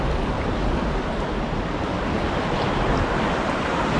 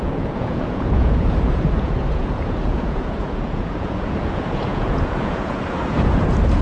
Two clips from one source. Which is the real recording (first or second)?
first